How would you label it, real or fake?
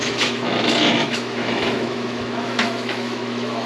fake